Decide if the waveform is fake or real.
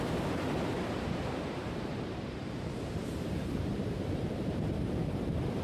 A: fake